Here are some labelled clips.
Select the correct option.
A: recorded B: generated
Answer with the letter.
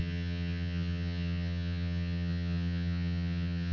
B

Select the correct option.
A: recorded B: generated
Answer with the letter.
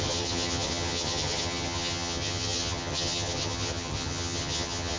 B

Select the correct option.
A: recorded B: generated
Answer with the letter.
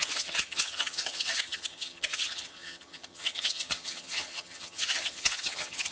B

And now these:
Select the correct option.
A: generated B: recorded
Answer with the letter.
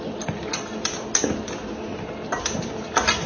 B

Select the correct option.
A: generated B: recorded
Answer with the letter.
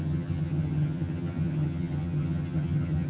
A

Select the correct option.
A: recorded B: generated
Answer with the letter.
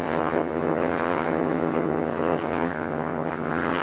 B